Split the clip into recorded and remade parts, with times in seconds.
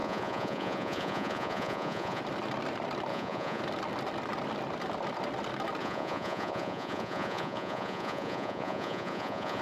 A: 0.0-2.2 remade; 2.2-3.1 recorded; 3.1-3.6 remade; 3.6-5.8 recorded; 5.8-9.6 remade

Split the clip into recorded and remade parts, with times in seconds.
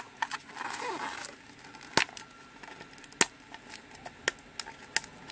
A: 0.0-5.3 recorded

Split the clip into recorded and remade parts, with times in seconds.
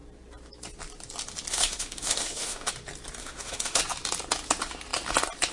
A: 0.0-1.5 recorded; 1.5-2.7 remade; 2.7-3.2 recorded; 3.2-3.8 remade; 3.8-5.5 recorded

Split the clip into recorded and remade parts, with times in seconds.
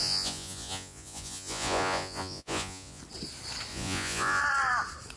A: 0.0-3.0 remade; 3.0-3.7 recorded; 3.7-4.4 remade; 4.4-5.2 recorded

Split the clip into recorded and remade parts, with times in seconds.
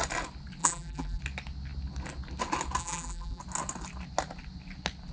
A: 0.0-0.6 recorded; 0.6-1.2 remade; 1.2-2.8 recorded; 2.8-3.4 remade; 3.4-5.1 recorded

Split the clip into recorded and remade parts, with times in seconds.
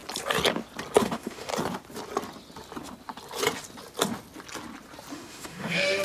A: 0.0-1.0 recorded; 1.0-1.5 remade; 1.5-5.1 recorded; 5.1-6.0 remade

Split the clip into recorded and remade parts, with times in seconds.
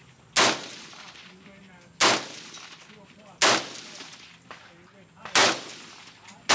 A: 0.0-6.5 recorded